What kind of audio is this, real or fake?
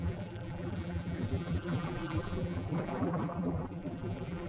fake